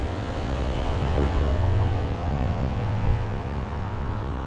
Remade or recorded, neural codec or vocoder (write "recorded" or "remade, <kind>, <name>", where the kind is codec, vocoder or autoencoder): remade, vocoder, WaveNeXt